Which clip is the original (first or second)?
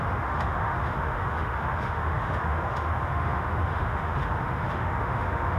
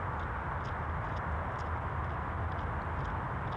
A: second